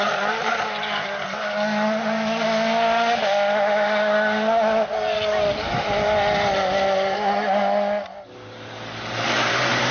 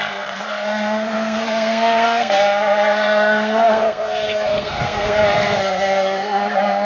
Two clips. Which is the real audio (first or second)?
first